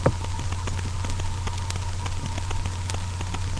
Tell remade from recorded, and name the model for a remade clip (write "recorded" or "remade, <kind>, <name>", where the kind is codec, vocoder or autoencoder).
recorded